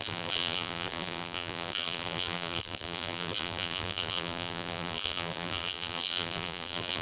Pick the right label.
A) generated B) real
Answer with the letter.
A